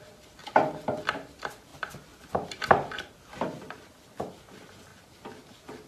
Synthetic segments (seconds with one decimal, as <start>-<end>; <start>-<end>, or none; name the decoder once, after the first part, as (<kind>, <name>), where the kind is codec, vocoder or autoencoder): 0.4-1.0 (vocoder, BigVGAN v2); 1.7-4.2